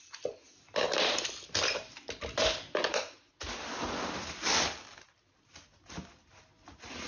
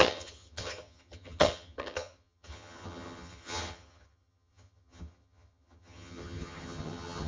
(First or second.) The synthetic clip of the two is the second